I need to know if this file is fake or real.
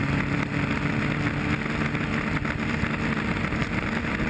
real